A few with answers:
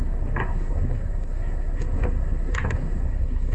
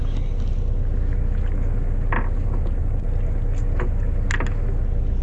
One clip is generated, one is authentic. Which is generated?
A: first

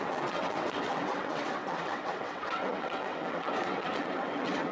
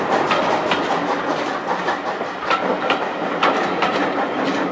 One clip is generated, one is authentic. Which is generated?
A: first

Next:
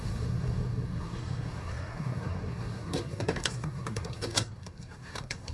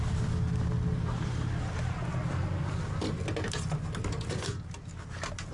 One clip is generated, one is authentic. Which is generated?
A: first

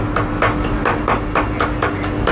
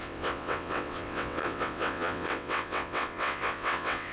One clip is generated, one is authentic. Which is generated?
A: second